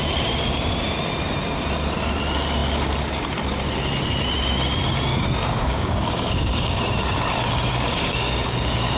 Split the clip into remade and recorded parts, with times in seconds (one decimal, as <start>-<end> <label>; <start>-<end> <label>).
0.0-5.1 recorded; 5.1-6.8 remade; 6.8-7.7 recorded; 7.7-9.0 remade